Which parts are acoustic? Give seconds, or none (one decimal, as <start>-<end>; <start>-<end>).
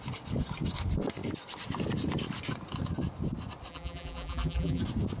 0.0-3.7; 4.8-5.2